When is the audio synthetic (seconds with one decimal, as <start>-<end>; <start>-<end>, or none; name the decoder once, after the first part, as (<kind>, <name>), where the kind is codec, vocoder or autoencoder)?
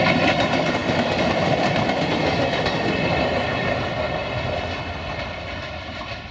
none